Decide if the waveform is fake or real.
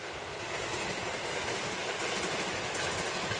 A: real